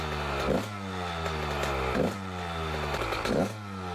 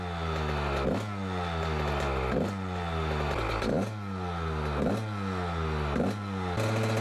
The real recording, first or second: second